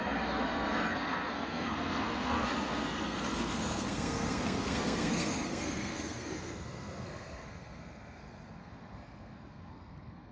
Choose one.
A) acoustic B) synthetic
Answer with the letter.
B